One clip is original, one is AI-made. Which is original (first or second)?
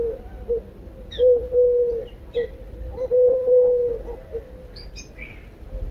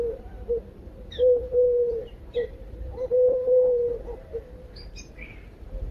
first